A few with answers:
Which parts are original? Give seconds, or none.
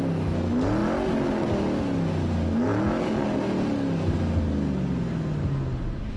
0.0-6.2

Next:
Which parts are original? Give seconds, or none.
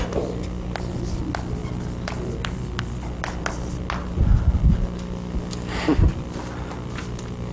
0.0-7.5